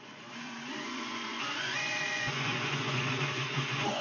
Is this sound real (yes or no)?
no